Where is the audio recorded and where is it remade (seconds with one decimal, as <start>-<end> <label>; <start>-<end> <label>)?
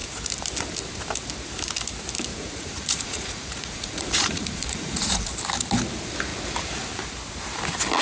0.0-2.3 recorded; 2.3-5.3 remade; 5.3-8.0 recorded